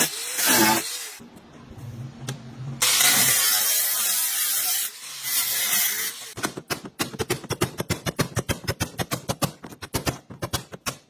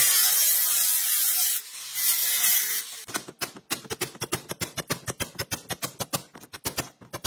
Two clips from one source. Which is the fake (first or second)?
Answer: first